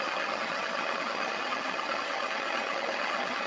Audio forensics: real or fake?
fake